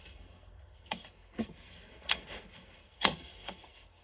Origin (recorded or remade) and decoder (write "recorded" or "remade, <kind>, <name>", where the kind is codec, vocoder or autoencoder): remade, codec, SNAC